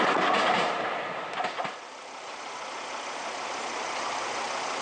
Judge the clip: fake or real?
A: real